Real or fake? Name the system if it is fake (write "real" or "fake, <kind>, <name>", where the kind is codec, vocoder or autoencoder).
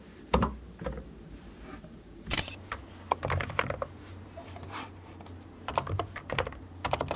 fake, vocoder, BigVGAN v2